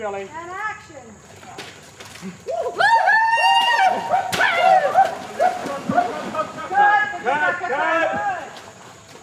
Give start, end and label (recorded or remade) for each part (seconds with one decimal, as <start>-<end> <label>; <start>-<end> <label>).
0.0-2.2 recorded; 2.2-5.1 remade; 5.1-6.7 recorded; 6.7-8.4 remade; 8.4-9.2 recorded